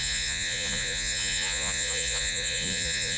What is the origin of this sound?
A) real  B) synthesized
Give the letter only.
B